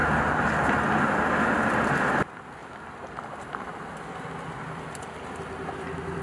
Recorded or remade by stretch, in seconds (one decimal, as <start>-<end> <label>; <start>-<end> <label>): 0.0-6.2 recorded